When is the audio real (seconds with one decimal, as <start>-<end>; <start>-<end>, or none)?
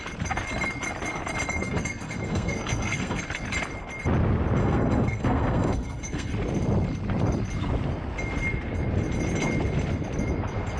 0.0-1.6; 3.2-4.6; 6.3-10.8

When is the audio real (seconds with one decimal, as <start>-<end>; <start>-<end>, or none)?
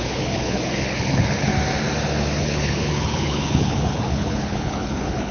1.5-2.4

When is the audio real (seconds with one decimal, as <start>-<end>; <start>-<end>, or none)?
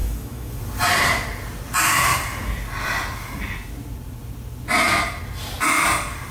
0.6-6.3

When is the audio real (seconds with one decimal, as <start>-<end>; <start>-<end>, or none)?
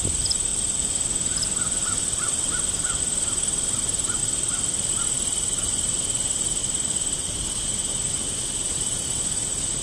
0.0-0.5; 3.0-4.2; 4.9-9.8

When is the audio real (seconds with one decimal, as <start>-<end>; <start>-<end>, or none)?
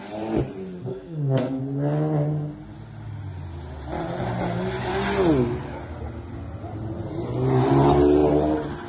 0.0-0.9; 1.6-8.9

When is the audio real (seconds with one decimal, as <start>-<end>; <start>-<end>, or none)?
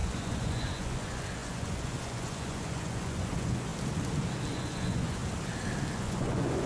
3.7-4.5; 5.2-5.9